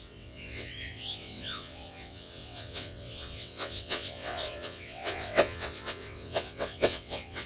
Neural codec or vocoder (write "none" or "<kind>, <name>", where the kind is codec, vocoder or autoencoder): vocoder, WaveNeXt